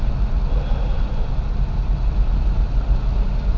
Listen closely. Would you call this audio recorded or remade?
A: recorded